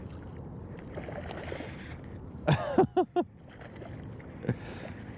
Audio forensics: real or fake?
real